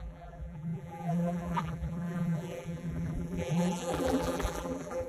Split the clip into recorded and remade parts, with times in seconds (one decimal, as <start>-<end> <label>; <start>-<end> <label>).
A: 0.0-5.1 remade